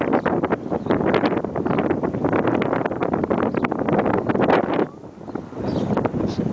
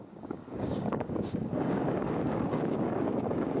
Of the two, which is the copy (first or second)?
second